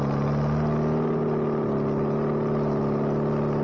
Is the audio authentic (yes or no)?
yes